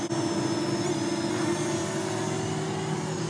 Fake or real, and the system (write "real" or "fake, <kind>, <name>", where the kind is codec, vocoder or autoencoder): real